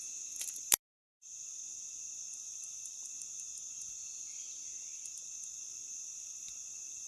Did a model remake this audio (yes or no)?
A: no